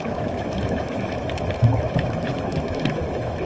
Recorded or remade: remade